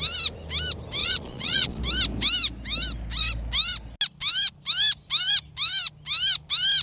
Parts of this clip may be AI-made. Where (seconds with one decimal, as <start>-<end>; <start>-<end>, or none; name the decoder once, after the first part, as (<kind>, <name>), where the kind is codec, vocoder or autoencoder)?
1.0-1.8 (vocoder, Vocos)